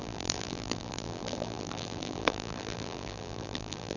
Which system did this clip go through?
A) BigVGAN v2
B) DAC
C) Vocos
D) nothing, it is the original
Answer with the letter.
A